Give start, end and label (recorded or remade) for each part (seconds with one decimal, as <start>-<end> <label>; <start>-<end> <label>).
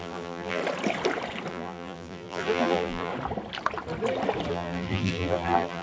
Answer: 0.0-0.6 remade; 0.6-1.5 recorded; 1.5-3.1 remade; 3.1-4.5 recorded; 4.5-5.8 remade